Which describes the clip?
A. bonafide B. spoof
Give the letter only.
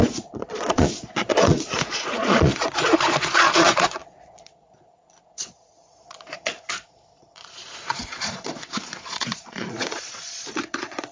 B